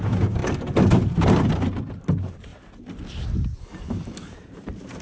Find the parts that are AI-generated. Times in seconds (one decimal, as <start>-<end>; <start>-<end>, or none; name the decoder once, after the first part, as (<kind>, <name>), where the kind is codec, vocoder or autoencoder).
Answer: 0.0-0.4 (vocoder, BigVGAN v2); 1.9-2.5; 3.5-5.0